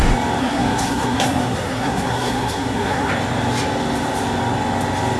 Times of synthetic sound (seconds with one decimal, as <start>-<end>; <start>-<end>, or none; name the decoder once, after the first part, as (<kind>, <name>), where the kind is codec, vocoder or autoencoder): 0.4-3.1 (codec, SNAC)